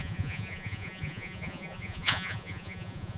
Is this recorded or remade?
remade